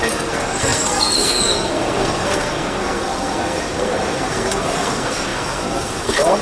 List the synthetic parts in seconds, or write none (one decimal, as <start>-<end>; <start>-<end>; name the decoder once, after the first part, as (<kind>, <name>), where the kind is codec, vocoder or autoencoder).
0.0-6.4 (codec, SNAC)